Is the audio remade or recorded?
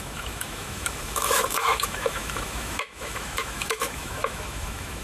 remade